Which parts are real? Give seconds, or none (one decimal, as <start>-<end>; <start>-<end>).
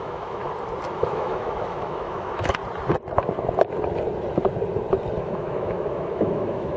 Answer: 0.4-0.9; 2.6-5.2